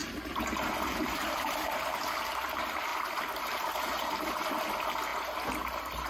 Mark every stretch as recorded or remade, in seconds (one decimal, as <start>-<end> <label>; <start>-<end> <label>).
0.0-2.0 remade; 2.0-2.9 recorded; 2.9-4.5 remade; 4.5-6.1 recorded